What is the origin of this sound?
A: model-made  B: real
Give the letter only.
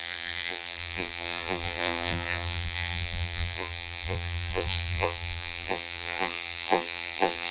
A